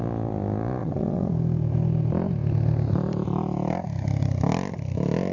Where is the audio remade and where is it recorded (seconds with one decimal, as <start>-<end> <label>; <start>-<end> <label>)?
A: 0.0-0.8 recorded; 0.8-1.3 remade; 1.3-5.3 recorded